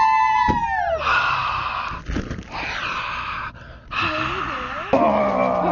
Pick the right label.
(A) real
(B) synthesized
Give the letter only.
A